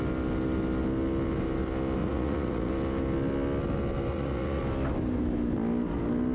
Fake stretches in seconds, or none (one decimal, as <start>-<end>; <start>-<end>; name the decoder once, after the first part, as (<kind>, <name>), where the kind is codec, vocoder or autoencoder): 2.0-2.7 (vocoder, Vocos); 4.1-4.6